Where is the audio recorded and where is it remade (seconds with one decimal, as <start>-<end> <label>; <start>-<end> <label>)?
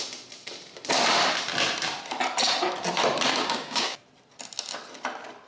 0.0-3.3 recorded; 3.3-4.0 remade; 4.0-5.5 recorded